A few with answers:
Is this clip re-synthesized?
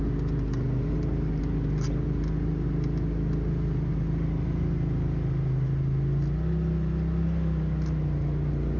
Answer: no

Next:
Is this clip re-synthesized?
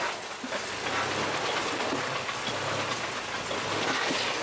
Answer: no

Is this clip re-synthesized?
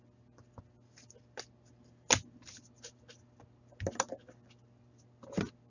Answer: no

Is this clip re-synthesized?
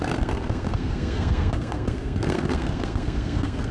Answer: yes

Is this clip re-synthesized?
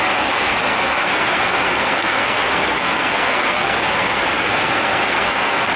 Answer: yes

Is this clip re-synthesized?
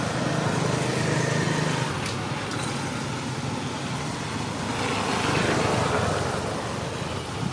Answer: no